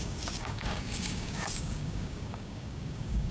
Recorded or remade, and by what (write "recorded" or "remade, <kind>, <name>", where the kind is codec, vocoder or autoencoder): remade, codec, DAC